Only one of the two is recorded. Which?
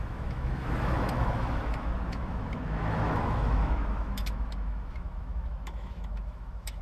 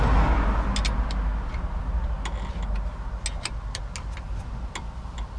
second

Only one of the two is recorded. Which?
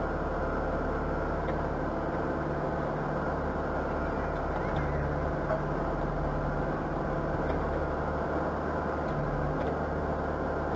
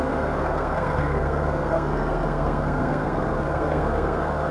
first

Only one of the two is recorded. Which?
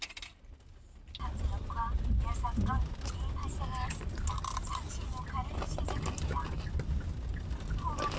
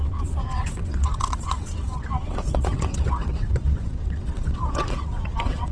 first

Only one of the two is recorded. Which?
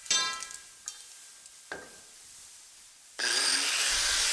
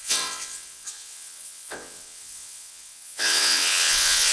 first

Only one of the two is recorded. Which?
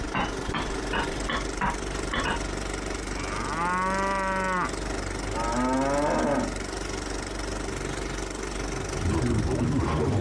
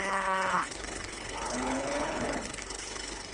first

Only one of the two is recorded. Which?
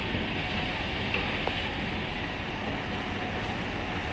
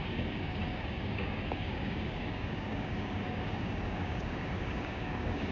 first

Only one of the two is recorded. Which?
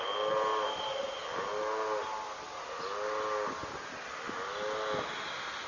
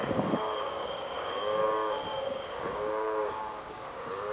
first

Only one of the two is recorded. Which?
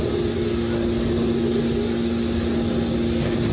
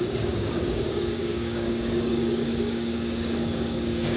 first